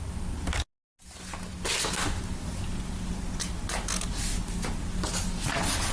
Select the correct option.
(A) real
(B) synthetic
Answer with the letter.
A